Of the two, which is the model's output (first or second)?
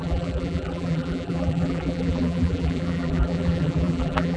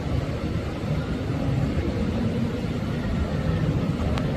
first